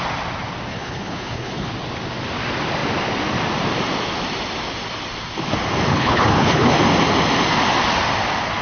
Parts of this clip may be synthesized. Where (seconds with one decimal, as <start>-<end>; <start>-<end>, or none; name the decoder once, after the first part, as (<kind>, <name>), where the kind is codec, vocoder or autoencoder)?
0.7-1.7 (codec, HILCodec); 5.9-6.7